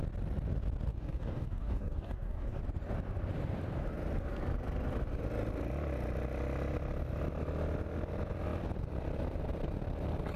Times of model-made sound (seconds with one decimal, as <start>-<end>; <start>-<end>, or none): 0.9-2.6